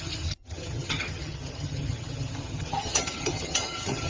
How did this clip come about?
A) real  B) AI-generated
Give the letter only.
B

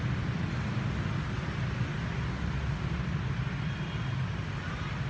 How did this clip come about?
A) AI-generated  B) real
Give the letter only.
B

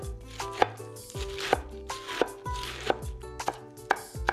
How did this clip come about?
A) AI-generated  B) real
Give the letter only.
B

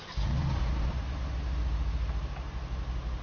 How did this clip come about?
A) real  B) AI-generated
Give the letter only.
A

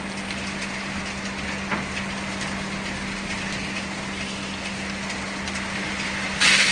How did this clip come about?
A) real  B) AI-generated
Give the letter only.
A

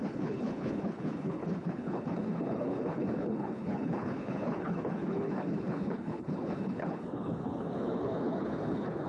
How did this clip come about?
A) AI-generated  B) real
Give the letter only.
A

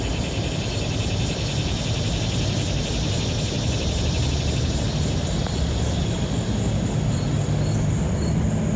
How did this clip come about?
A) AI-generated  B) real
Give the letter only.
B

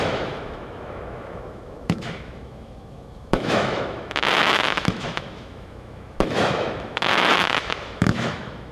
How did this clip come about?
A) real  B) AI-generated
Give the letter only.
B